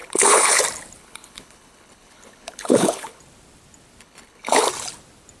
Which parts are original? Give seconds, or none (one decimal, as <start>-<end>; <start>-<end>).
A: 0.6-1.0; 3.2-4.0; 4.7-5.4